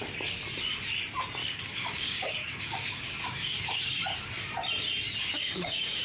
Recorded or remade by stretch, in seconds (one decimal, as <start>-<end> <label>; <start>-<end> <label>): 0.0-1.4 recorded; 1.4-4.0 remade; 4.0-5.3 recorded; 5.3-6.0 remade